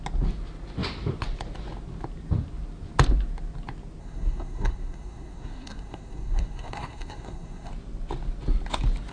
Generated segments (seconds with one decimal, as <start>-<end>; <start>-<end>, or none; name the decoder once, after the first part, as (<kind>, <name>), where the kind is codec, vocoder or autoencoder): 4.0-7.7 (codec, SNAC)